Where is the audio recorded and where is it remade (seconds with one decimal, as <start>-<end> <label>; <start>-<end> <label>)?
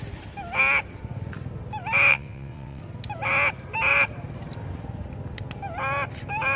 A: 0.0-2.1 recorded; 2.1-2.8 remade; 2.8-6.6 recorded